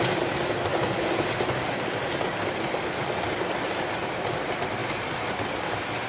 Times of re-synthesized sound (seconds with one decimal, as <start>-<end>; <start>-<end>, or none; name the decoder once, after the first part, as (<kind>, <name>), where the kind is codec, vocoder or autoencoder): none